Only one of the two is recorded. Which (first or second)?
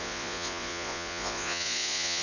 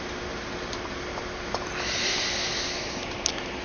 second